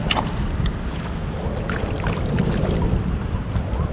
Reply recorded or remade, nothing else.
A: recorded